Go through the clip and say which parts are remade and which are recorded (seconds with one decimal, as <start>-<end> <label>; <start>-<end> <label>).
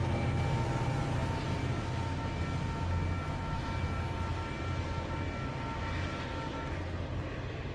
0.0-7.7 recorded